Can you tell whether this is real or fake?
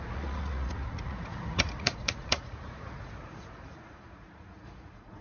fake